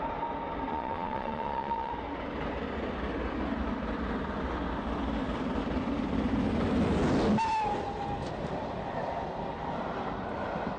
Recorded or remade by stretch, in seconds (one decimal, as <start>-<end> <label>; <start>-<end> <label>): 0.0-0.7 recorded; 0.7-1.9 remade; 1.9-10.8 recorded